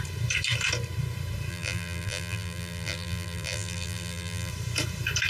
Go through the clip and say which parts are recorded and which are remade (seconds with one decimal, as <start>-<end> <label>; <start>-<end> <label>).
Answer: 0.0-1.5 recorded; 1.5-4.5 remade; 4.5-5.3 recorded